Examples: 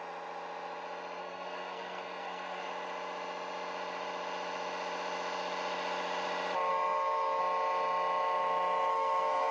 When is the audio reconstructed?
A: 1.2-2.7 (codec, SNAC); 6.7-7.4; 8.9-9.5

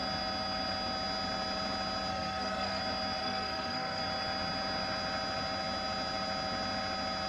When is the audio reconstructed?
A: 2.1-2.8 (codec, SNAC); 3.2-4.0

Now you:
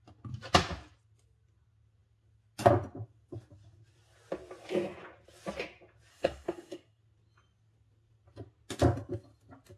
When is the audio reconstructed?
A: 6.1-7.0 (codec, SNAC)

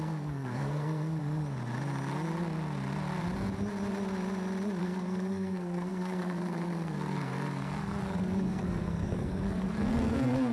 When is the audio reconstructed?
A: 0.0-1.2 (codec, SNAC); 4.8-10.5

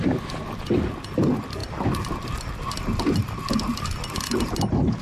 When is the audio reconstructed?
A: none